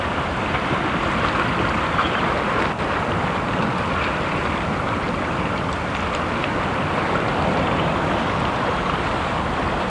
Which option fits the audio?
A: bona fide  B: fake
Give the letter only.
A